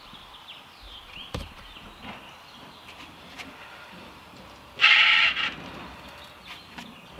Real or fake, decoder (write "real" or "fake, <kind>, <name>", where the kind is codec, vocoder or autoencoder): fake, vocoder, BigVGAN v2